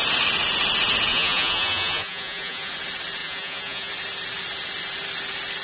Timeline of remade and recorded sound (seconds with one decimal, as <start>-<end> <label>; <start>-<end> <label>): 0.0-1.1 recorded; 1.1-2.7 remade; 2.7-3.2 recorded; 3.2-3.9 remade; 3.9-5.6 recorded